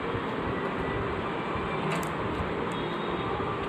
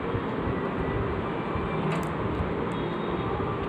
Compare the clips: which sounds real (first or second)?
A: second